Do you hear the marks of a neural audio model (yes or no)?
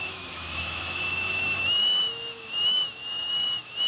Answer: yes